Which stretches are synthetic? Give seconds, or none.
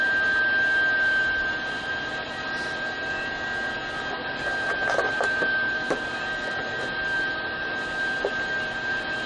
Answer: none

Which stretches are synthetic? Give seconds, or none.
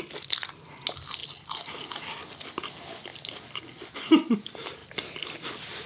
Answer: none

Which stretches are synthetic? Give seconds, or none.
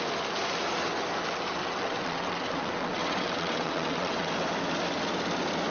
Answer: 1.6-4.3 (vocoder, WaveNeXt)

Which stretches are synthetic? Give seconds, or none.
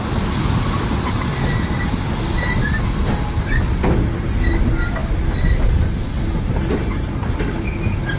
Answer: none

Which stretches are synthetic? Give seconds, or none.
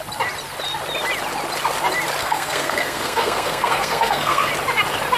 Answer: 2.2-4.5 (codec, SNAC)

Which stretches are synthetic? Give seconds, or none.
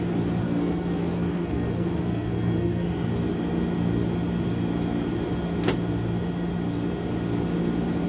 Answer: 0.4-3.1 (codec, SNAC)